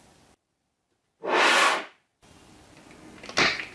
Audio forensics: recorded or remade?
recorded